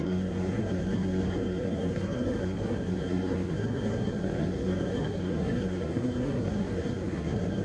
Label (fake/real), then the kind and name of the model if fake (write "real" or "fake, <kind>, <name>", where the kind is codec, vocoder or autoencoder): fake, codec, SNAC